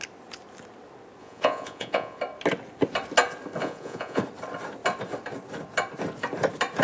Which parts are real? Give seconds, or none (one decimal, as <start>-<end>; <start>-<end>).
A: 0.0-1.2; 2.2-3.6; 4.2-6.8